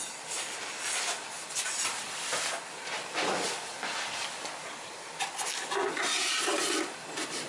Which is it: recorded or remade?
recorded